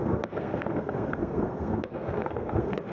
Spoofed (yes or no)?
yes